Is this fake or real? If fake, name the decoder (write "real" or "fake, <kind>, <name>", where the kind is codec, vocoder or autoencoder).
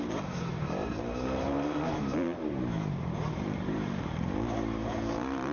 fake, vocoder, BigVGAN v2